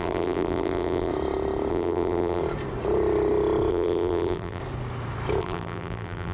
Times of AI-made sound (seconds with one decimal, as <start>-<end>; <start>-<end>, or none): 0.0-1.1; 1.7-2.4; 3.7-4.6; 5.4-6.3